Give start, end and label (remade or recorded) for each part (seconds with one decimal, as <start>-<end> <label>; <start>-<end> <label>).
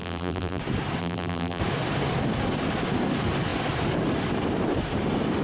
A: 0.0-0.6 remade; 0.6-1.0 recorded; 1.0-1.6 remade; 1.6-5.4 recorded